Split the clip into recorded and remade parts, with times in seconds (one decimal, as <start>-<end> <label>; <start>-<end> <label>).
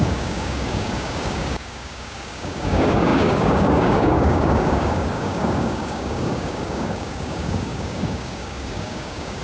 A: 0.0-9.4 remade